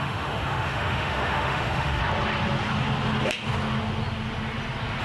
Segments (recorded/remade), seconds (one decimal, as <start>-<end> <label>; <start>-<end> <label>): 0.0-2.0 remade; 2.0-5.0 recorded